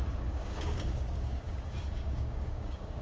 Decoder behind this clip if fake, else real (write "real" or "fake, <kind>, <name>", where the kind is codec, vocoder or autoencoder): fake, codec, DAC